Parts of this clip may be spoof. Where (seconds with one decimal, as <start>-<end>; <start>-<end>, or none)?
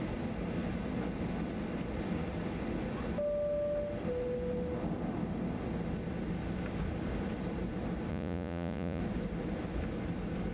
8.1-9.0